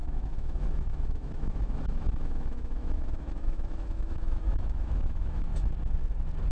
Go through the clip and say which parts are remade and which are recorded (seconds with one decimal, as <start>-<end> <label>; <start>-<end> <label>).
0.0-5.5 remade; 5.5-6.5 recorded